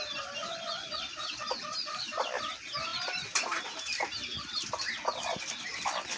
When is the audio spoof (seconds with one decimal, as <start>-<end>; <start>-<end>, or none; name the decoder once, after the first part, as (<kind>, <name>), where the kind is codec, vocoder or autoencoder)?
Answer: 0.4-1.0 (vocoder, Vocos)